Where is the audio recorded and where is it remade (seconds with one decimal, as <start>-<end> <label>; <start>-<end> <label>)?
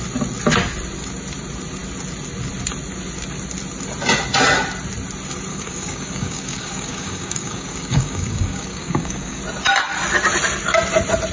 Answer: 0.0-5.5 recorded; 5.5-9.4 remade; 9.4-11.3 recorded